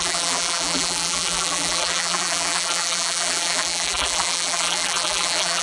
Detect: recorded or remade remade